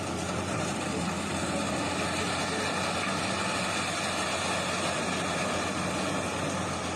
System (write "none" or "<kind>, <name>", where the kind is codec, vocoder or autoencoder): none